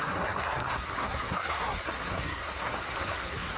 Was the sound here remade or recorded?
remade